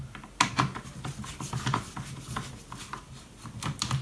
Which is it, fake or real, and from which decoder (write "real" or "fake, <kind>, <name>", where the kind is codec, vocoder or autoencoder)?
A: real